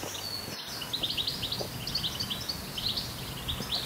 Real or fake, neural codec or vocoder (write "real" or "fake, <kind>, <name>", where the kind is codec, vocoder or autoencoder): real